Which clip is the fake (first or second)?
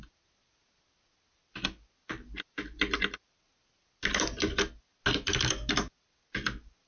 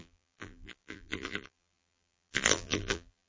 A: second